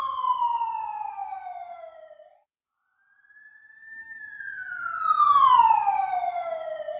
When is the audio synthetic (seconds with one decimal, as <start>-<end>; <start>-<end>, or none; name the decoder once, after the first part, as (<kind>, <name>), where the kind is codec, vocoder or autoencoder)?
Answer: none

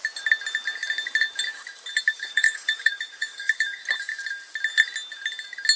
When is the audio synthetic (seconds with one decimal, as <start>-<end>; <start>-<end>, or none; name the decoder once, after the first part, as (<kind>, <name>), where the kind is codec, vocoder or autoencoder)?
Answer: 2.0-3.8 (codec, DAC)

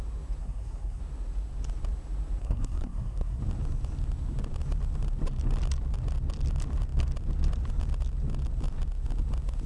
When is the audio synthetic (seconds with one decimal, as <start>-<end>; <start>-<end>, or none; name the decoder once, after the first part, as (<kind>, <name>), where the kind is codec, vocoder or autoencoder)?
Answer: 0.4-1.0 (codec, SNAC); 2.4-3.4

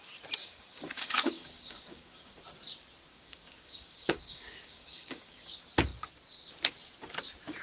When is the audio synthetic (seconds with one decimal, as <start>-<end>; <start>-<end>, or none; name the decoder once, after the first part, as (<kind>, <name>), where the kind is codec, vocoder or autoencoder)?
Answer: 0.4-2.3 (codec, DAC); 3.1-5.5

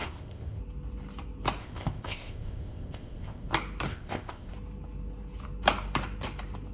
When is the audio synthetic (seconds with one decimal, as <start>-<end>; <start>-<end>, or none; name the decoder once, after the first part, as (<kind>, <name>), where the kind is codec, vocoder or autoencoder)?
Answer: 0.0-0.6 (codec, ZipCodec); 1.6-3.5; 3.9-4.5

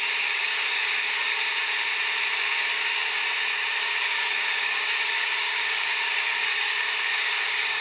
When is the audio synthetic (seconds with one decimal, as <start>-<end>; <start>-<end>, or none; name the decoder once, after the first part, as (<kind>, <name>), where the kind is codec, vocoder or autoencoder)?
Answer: 0.0-1.4 (codec, DAC); 2.4-3.2; 3.8-7.8

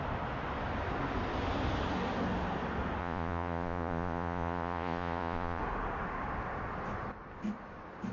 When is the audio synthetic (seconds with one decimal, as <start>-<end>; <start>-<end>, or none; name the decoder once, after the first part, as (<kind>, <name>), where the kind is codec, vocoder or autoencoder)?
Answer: 3.0-5.6 (vocoder, Vocos)